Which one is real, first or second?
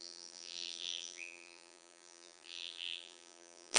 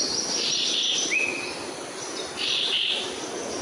second